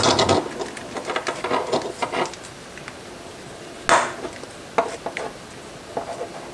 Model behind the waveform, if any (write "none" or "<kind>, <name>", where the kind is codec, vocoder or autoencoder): none